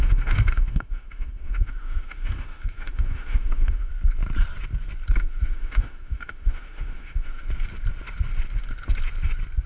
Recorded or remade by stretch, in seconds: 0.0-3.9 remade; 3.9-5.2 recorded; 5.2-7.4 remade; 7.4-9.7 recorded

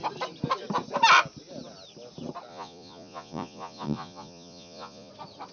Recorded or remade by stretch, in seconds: 0.0-2.5 recorded; 2.5-5.1 remade; 5.1-5.5 recorded

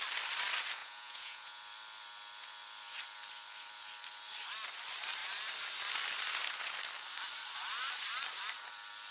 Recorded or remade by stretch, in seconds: 0.0-0.8 recorded; 0.8-1.6 remade; 1.6-9.1 recorded

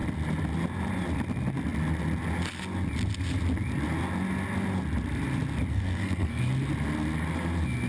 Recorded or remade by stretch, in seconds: 0.0-5.7 recorded; 5.7-6.4 remade; 6.4-7.9 recorded